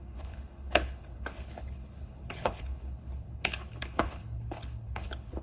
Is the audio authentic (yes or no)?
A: no